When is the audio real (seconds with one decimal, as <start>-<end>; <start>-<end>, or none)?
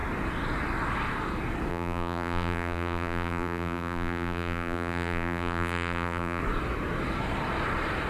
0.0-1.7; 6.4-8.1